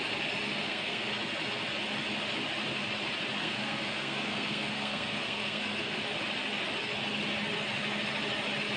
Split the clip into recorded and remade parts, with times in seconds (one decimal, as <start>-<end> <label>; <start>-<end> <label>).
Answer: 0.0-0.6 recorded; 0.6-1.1 remade; 1.1-3.4 recorded; 3.4-6.0 remade; 6.0-8.8 recorded